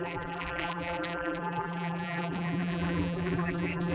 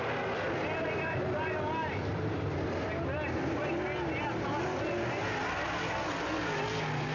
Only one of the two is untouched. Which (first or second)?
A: second